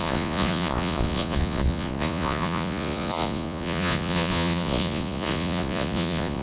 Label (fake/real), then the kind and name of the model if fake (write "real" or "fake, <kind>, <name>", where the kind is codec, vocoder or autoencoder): fake, vocoder, Vocos